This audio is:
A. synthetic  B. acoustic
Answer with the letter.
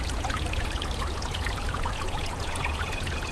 A